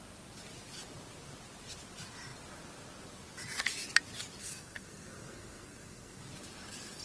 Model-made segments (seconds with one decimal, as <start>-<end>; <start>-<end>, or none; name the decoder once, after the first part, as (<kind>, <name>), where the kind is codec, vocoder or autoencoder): 4.4-6.2 (codec, SNAC)